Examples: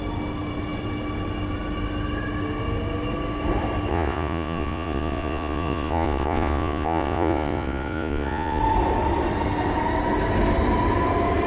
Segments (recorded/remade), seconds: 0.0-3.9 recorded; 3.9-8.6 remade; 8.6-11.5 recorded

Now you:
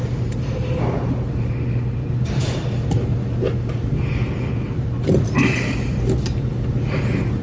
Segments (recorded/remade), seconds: 0.0-7.4 recorded

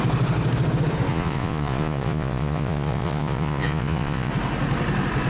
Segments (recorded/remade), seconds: 0.0-1.1 recorded; 1.1-4.3 remade; 4.3-5.3 recorded

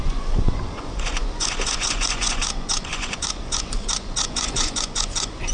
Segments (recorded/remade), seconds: 0.0-5.5 remade

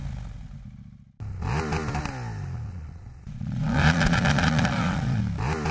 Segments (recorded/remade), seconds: 0.0-2.7 recorded; 2.7-5.2 remade; 5.2-5.7 recorded

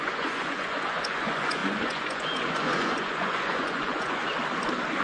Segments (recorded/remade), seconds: 0.0-4.2 remade; 4.2-5.0 recorded

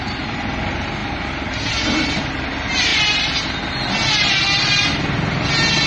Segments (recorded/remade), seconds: 0.0-5.9 recorded

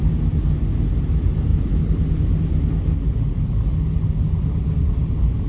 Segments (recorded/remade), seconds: 0.0-5.5 recorded